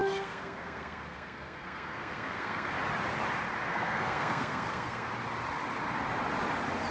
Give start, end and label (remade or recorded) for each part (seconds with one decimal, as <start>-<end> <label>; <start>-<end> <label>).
0.0-2.7 remade; 2.7-3.7 recorded; 3.7-5.1 remade; 5.1-6.9 recorded

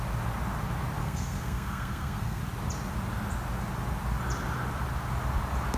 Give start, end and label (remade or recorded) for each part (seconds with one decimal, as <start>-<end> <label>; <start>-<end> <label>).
0.0-1.0 recorded; 1.0-2.4 remade; 2.4-5.8 recorded